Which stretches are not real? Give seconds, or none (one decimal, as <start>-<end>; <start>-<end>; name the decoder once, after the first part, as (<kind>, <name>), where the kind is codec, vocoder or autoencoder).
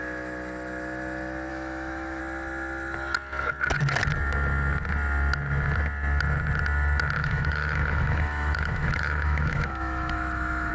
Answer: 1.5-2.2 (autoencoder, DAC-VAE); 7.2-10.7